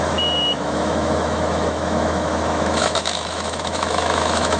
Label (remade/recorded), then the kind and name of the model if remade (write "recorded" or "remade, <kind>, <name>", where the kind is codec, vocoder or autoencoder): remade, autoencoder, DAC-VAE